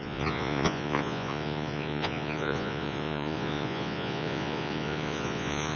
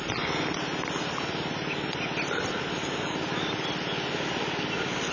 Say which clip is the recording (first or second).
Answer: second